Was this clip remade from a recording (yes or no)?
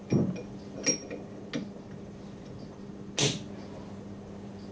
no